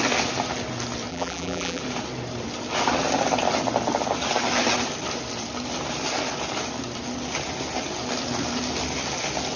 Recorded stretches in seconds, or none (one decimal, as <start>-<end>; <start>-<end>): 0.0-1.1; 1.8-9.6